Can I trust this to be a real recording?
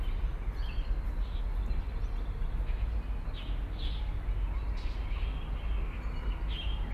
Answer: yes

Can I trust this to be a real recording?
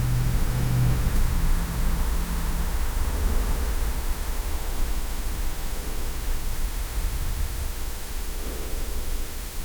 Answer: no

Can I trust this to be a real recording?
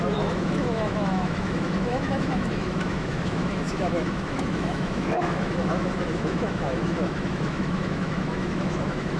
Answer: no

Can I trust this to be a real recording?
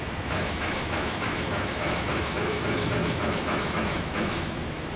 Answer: no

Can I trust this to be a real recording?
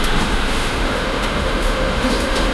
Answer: no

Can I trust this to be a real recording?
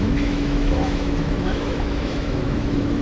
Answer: no